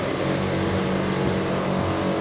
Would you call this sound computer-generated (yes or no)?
no